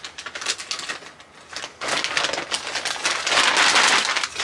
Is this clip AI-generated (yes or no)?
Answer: no